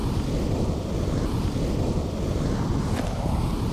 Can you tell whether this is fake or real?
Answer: fake